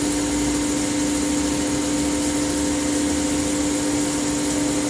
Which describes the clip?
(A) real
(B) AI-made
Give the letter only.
A